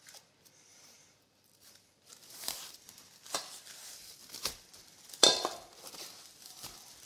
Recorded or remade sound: remade